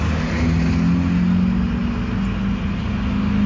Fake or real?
real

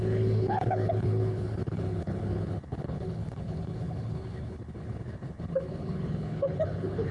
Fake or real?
fake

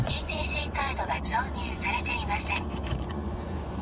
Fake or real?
fake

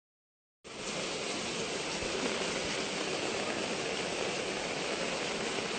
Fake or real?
real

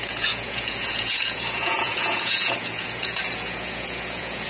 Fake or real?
fake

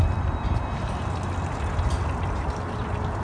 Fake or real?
real